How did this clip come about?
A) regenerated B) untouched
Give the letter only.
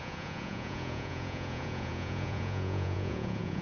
A